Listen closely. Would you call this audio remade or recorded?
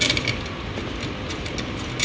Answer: recorded